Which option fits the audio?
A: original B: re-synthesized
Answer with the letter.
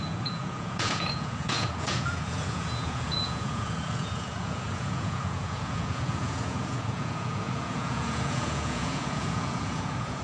B